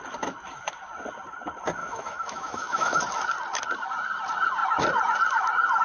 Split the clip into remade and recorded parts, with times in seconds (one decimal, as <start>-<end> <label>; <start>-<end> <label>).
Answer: 0.0-1.8 recorded; 1.8-3.0 remade; 3.0-5.8 recorded